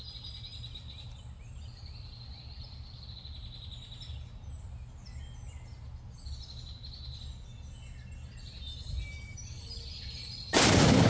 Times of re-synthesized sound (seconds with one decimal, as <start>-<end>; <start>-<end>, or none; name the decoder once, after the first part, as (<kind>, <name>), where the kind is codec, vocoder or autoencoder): none